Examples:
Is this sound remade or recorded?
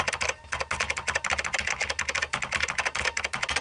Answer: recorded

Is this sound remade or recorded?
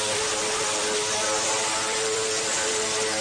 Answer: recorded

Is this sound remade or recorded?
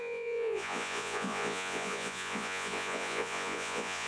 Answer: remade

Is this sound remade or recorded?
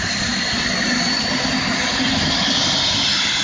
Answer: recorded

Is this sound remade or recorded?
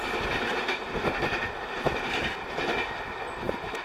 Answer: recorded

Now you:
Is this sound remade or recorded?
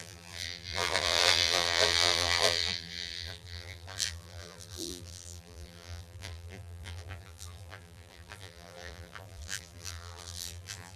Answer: remade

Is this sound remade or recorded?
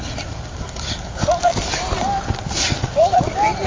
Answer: recorded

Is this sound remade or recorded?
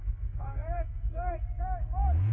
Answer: remade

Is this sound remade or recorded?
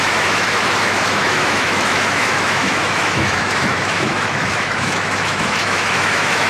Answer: remade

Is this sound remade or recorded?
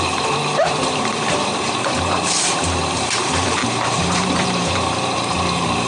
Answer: remade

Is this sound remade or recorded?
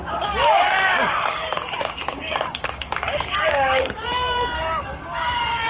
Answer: remade